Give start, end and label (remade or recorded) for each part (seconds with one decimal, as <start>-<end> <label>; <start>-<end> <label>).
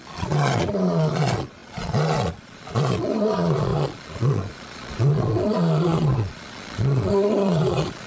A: 0.0-8.1 remade